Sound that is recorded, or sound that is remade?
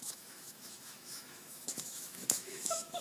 remade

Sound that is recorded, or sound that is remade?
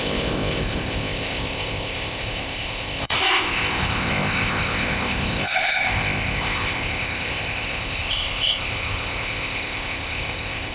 remade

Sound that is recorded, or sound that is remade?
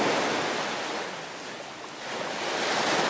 recorded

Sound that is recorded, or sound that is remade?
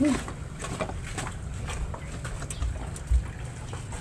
recorded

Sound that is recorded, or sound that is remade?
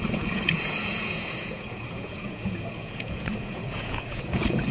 remade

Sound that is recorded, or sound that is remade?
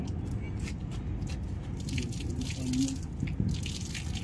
recorded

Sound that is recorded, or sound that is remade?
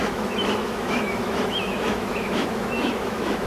remade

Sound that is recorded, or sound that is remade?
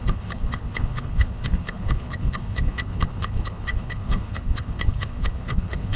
remade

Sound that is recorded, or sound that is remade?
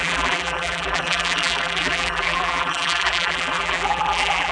remade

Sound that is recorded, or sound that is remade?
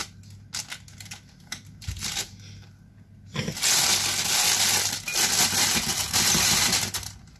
recorded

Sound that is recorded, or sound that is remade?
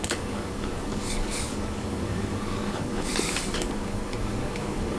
remade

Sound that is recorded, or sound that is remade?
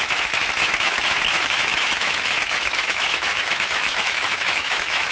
remade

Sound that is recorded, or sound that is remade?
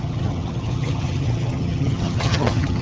remade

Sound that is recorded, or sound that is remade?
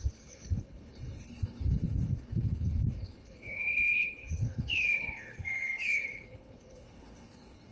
remade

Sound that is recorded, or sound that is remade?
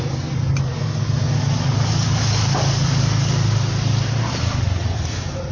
recorded